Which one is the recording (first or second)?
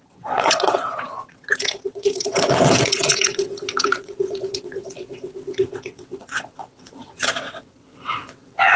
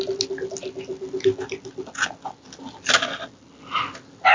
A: second